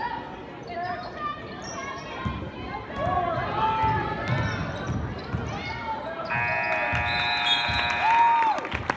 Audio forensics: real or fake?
real